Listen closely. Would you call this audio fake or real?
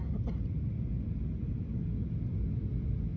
real